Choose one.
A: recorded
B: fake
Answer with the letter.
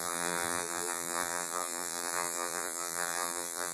B